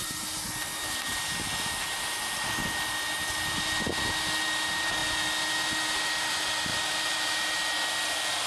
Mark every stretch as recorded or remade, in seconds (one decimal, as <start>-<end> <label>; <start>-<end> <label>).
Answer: 0.0-8.5 recorded